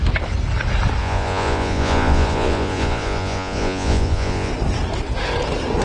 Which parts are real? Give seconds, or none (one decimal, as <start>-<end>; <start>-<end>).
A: 0.0-1.0; 4.5-5.8